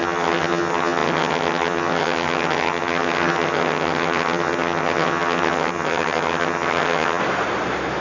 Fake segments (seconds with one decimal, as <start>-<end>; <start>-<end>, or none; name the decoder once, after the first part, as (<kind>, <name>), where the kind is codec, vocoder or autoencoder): 0.0-7.2 (vocoder, HiFi-GAN)